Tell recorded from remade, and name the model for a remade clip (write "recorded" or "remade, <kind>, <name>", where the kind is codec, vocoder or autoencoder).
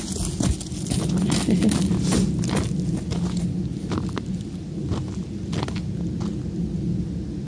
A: recorded